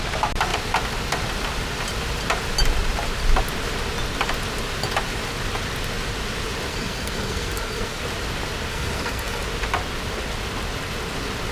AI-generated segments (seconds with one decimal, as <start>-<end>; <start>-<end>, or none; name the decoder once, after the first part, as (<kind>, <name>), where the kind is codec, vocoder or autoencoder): 6.7-8.0 (codec, SNAC); 8.7-9.4